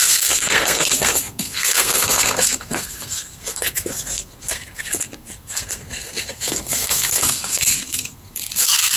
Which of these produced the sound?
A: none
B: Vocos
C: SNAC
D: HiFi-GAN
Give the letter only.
C